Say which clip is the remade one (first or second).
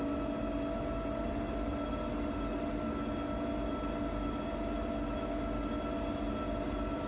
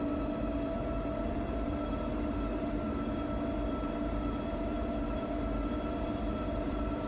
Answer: second